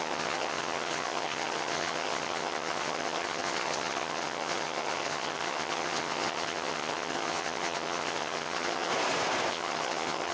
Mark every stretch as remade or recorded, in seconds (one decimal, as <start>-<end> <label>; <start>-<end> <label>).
0.0-8.9 remade; 8.9-9.5 recorded; 9.5-10.3 remade